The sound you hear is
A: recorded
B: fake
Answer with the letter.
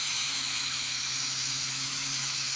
B